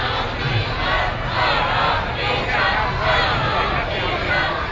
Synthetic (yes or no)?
no